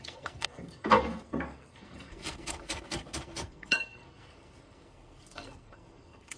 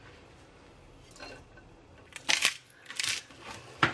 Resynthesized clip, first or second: first